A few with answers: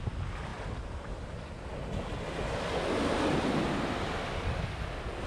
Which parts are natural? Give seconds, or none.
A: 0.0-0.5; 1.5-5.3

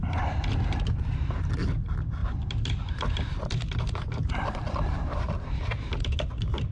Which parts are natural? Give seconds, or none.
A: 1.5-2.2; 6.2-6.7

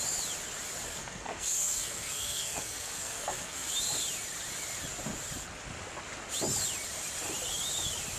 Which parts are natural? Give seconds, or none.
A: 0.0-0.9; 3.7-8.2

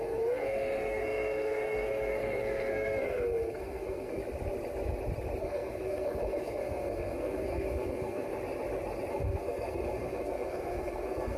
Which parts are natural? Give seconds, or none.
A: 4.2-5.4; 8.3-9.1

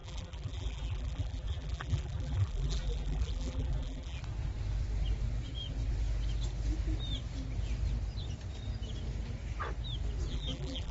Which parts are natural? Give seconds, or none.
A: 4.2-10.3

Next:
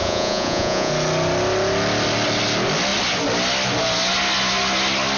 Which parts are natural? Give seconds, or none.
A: 0.9-5.2